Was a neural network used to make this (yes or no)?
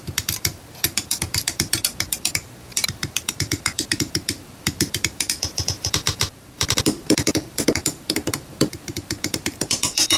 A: yes